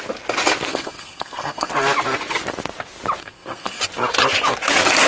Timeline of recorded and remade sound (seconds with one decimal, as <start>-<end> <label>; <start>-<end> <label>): 0.0-0.7 recorded; 0.7-1.7 remade; 1.7-3.2 recorded; 3.2-3.8 remade; 3.8-5.1 recorded